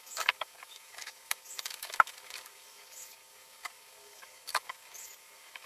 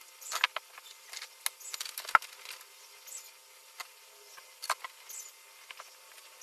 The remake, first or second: first